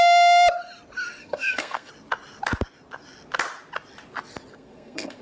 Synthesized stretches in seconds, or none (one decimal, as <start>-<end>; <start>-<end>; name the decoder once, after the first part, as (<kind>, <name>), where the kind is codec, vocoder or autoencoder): 1.2-1.9 (codec, SNAC); 4.5-5.2